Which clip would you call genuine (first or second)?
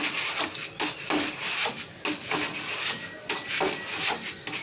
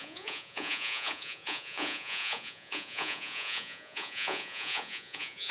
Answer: first